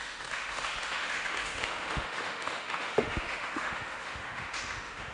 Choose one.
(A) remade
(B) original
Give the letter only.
A